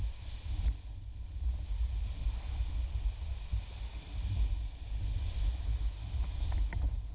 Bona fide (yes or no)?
yes